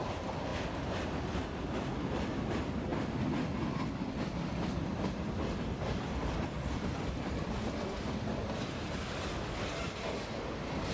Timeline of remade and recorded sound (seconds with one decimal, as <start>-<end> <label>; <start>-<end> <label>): 0.0-2.9 recorded; 2.9-8.0 remade; 8.0-10.9 recorded